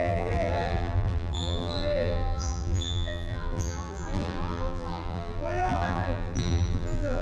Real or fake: fake